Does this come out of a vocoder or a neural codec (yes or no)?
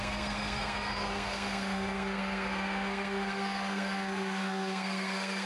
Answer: yes